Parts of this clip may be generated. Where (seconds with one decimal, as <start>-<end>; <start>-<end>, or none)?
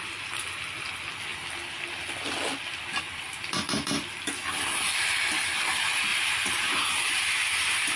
6.1-6.7